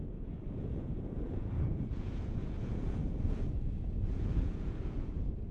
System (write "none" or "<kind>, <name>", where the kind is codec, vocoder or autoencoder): vocoder, Vocos